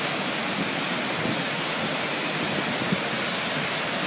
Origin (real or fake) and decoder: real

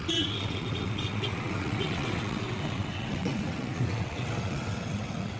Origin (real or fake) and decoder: fake, vocoder, WaveNeXt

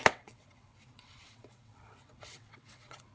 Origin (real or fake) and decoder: fake, vocoder, WaveNeXt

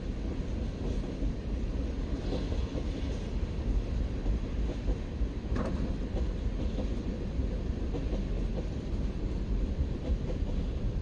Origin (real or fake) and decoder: real